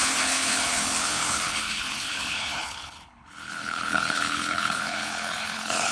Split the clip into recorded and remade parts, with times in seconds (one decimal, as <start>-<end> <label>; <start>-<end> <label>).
0.0-5.9 remade